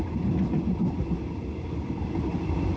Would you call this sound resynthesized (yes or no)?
no